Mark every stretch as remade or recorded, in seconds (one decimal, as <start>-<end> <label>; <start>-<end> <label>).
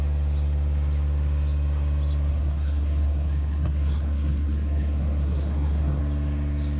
0.0-2.3 recorded; 2.3-6.0 remade; 6.0-6.8 recorded